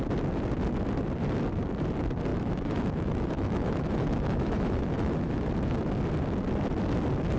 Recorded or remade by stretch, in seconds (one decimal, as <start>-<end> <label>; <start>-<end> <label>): 0.0-2.3 recorded; 2.3-5.5 remade; 5.5-7.4 recorded